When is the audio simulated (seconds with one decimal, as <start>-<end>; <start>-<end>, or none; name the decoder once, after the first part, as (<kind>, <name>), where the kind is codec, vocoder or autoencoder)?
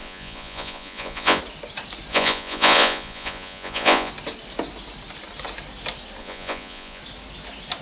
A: 0.0-1.4 (vocoder, Vocos); 2.1-4.1; 6.2-7.0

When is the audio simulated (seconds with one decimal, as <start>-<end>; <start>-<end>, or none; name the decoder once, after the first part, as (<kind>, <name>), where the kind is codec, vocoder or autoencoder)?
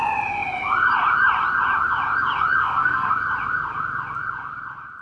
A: 2.6-3.1 (codec, SNAC)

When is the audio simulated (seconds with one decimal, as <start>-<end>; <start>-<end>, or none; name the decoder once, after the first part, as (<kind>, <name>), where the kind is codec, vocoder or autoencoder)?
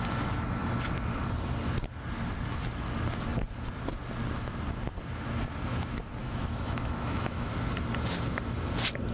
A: 6.2-7.5 (autoencoder, DAC-VAE)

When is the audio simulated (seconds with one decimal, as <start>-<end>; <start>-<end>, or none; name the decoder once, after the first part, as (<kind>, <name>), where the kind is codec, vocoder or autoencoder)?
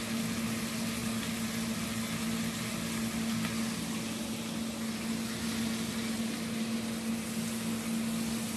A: none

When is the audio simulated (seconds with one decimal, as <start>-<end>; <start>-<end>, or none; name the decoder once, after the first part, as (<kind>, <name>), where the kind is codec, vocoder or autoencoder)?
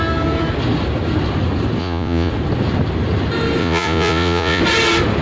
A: 1.8-2.3 (vocoder, Vocos); 3.6-4.6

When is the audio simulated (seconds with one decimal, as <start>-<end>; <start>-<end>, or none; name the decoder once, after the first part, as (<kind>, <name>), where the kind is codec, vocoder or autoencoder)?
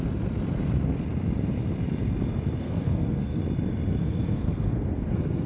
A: 2.6-3.4 (codec, SNAC); 4.0-5.5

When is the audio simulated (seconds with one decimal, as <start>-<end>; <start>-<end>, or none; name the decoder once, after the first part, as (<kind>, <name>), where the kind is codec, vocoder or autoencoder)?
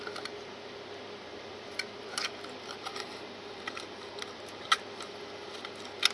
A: 2.9-3.8 (vocoder, BigVGAN v2)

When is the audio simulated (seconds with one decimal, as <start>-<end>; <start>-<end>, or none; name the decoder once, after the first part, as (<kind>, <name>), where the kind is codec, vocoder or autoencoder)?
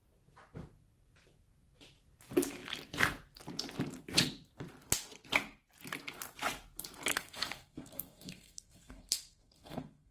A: 7.1-10.1 (codec, SNAC)